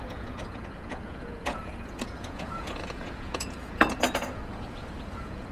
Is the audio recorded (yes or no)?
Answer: no